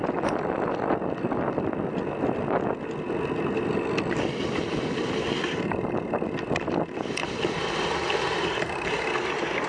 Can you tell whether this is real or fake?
real